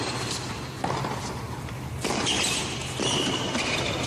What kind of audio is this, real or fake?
real